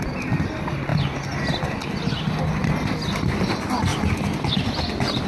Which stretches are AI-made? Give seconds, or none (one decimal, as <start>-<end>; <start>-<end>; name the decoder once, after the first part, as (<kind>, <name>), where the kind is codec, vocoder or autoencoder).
none